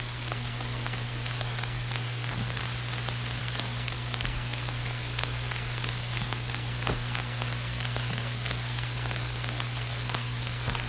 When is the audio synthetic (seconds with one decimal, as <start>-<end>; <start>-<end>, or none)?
0.0-2.6; 3.4-10.9